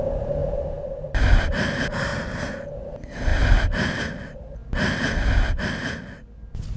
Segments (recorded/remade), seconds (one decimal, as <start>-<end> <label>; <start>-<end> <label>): 0.0-0.4 recorded; 0.4-1.5 remade; 1.5-3.3 recorded; 3.3-4.0 remade; 4.0-6.8 recorded